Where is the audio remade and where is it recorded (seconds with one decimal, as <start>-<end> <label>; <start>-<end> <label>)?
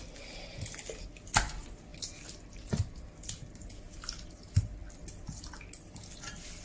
0.0-6.6 recorded